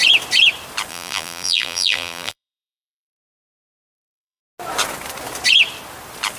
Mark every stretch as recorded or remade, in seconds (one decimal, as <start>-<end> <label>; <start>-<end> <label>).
0.0-0.9 recorded; 0.9-4.4 remade; 4.4-6.4 recorded